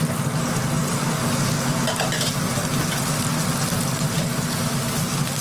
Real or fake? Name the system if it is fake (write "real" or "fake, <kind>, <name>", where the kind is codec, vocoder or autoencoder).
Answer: real